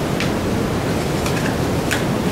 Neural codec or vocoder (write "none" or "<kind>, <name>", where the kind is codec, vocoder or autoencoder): none